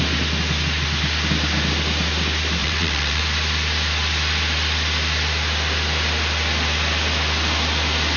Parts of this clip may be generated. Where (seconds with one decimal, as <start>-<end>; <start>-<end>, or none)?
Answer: 2.6-3.2